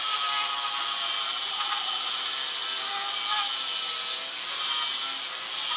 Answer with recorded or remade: recorded